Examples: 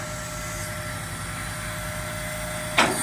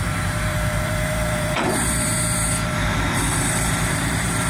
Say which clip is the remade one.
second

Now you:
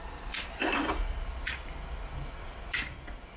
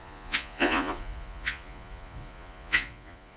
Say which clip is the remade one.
second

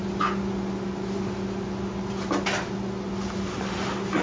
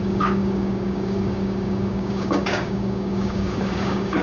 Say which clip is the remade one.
second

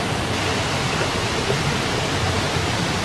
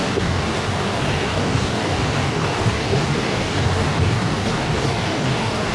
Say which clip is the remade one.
second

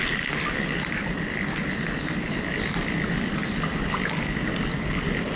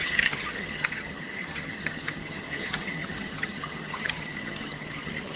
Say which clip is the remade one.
second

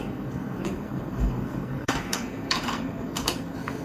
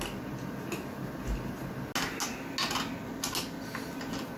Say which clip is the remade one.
first